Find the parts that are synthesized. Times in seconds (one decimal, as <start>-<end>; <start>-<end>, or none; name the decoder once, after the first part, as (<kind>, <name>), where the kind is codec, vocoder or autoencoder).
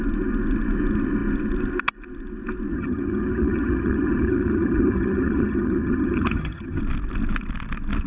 2.7-6.8 (vocoder, HiFi-GAN)